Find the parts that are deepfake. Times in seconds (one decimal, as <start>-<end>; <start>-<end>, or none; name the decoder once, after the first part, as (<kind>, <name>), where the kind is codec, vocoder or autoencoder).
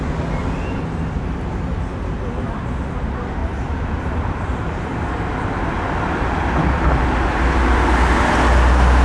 3.4-3.9 (vocoder, BigVGAN v2)